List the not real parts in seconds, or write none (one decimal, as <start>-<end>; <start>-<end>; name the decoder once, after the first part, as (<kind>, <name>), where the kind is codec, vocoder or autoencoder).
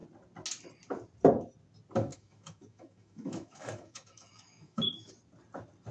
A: 2.1-5.1 (autoencoder, DAC-VAE)